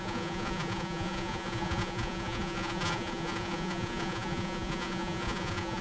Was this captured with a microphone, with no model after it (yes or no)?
no